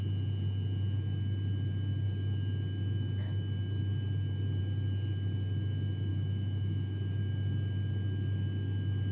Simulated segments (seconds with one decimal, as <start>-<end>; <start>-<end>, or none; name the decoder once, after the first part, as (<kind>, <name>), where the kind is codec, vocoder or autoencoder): 6.1-7.2 (autoencoder, DAC-VAE)